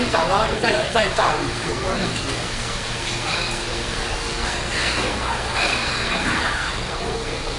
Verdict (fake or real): fake